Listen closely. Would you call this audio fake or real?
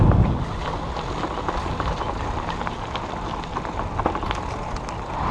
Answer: real